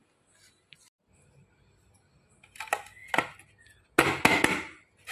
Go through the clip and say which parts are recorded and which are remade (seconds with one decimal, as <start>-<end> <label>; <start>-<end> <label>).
0.0-5.1 recorded